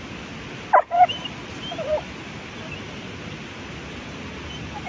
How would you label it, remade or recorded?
recorded